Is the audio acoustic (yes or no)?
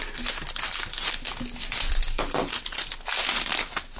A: yes